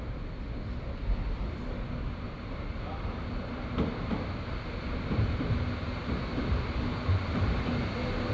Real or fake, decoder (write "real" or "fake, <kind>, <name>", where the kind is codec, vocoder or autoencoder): fake, vocoder, BigVGAN v2